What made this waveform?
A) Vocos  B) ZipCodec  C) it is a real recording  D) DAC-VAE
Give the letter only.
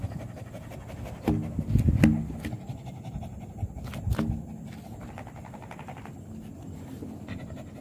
C